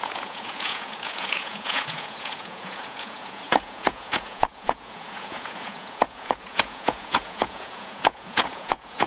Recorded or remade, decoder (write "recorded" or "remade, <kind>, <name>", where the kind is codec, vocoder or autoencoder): remade, vocoder, Vocos